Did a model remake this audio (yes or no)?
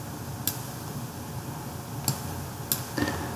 no